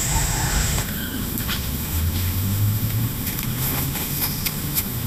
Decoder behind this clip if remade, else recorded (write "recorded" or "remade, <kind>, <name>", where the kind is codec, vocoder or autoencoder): remade, autoencoder, DAC-VAE